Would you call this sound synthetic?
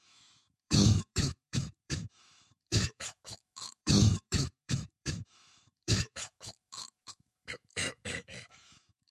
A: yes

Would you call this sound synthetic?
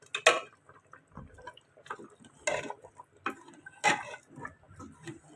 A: no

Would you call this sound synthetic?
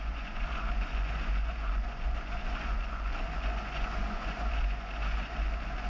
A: yes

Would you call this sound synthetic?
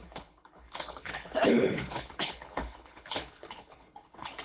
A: yes